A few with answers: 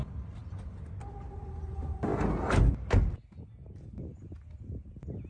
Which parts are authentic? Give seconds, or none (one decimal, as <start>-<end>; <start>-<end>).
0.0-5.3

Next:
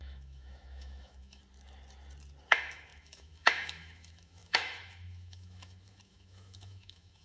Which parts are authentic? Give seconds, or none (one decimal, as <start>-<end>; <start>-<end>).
1.4-2.5

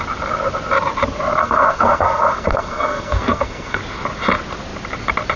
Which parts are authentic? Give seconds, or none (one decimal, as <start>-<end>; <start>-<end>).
0.0-1.4; 3.8-5.4

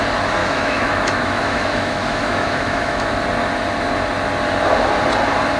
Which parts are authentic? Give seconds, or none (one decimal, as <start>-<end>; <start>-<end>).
0.0-0.4; 3.1-5.6

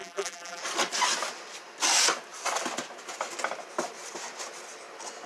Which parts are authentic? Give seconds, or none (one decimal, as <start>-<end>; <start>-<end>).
0.6-5.3

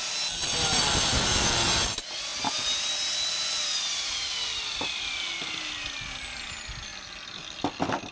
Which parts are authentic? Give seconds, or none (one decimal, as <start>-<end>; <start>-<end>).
0.0-8.1

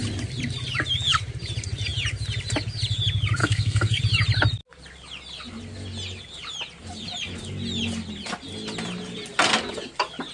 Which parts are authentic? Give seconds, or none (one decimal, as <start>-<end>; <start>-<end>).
0.0-3.4; 4.0-10.3

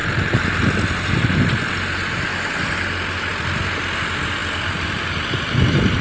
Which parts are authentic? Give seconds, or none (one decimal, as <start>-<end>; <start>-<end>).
0.7-4.4